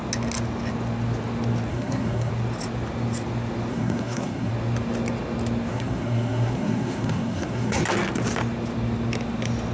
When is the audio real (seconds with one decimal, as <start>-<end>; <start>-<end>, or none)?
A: 0.0-1.7; 2.3-3.7; 4.5-5.7; 7.8-9.7